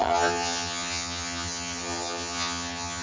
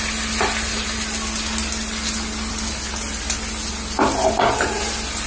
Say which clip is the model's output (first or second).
first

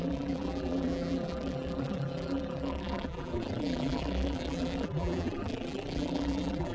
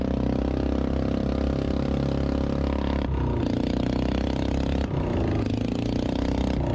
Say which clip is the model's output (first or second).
first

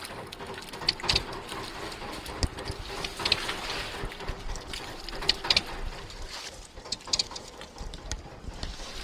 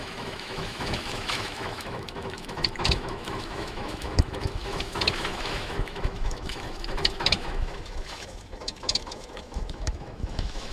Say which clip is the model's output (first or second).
second